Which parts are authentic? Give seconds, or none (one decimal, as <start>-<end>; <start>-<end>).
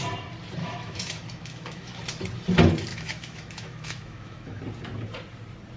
0.0-0.6; 2.0-2.9; 4.6-5.8